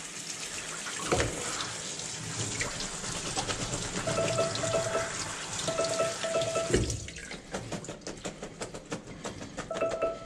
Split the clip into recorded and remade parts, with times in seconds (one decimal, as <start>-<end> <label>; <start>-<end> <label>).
0.0-10.3 recorded